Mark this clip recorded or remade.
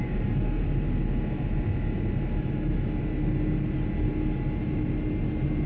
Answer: recorded